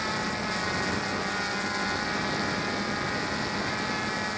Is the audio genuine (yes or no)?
yes